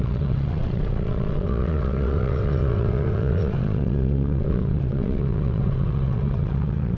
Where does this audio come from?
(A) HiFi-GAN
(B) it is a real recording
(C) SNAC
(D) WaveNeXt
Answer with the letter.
D